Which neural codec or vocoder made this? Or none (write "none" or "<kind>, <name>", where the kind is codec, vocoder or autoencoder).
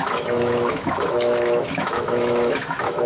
autoencoder, DAC-VAE